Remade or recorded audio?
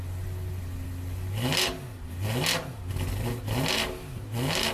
recorded